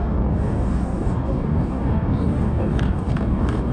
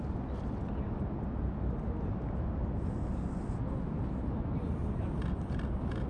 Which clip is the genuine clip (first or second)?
second